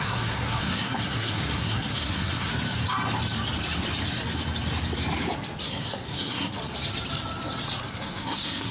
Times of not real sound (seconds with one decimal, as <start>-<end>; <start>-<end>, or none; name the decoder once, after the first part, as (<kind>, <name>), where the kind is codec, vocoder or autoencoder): 0.0-2.5 (codec, SNAC); 5.6-6.6; 7.9-8.7